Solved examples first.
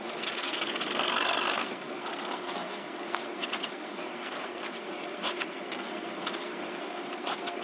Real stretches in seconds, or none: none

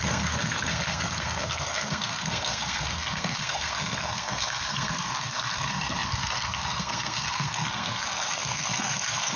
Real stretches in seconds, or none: none

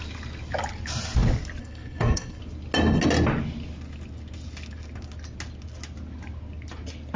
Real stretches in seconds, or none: 0.0-1.6; 2.4-7.2